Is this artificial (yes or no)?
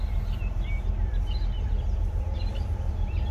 no